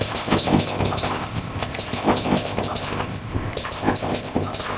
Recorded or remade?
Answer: remade